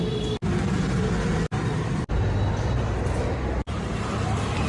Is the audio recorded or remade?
recorded